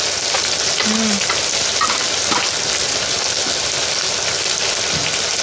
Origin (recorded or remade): recorded